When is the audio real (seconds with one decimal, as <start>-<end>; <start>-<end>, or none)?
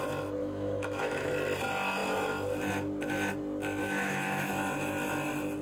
0.0-0.4; 1.3-3.8; 4.5-5.6